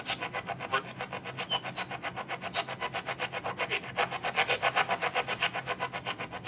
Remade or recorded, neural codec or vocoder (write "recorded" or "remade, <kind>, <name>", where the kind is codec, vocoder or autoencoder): recorded